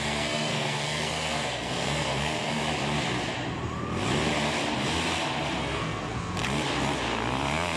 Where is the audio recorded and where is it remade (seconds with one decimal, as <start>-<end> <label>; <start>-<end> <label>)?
0.0-2.6 remade; 2.6-5.6 recorded; 5.6-6.4 remade; 6.4-7.8 recorded